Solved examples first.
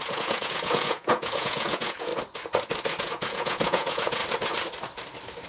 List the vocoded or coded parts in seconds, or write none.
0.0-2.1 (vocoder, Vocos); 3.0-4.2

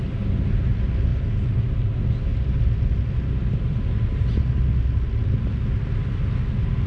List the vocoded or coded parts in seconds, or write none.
none

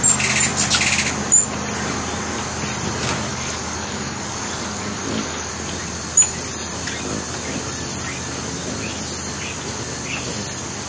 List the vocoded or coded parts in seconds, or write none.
3.3-5.5 (codec, DAC)

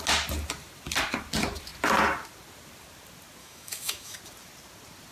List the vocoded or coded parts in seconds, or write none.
3.4-4.2 (autoencoder, DAC-VAE)

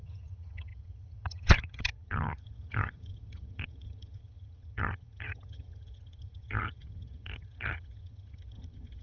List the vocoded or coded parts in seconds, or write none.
0.0-9.0 (vocoder, HiFi-GAN)